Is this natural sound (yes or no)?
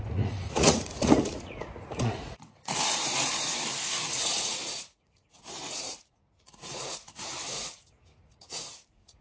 no